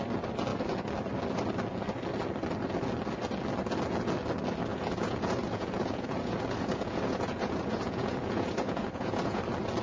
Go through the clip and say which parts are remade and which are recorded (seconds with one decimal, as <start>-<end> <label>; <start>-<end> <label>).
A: 0.0-4.7 recorded; 4.7-9.4 remade; 9.4-9.8 recorded